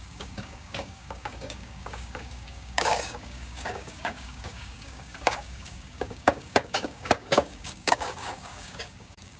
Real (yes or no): no